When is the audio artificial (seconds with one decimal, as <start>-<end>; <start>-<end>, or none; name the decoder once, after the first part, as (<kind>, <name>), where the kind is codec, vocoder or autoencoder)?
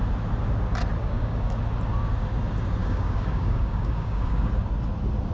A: 1.0-1.5 (codec, DAC); 2.8-4.5